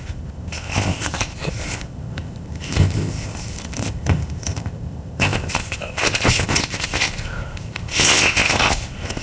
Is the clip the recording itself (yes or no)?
no